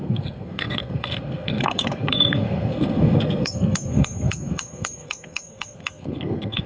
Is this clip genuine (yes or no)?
no